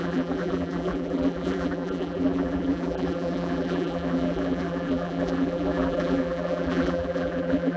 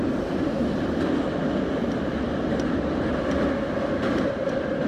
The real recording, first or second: second